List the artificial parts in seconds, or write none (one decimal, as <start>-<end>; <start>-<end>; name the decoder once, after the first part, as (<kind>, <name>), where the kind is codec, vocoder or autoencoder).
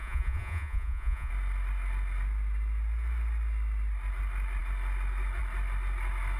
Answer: 0.0-1.3 (vocoder, Vocos)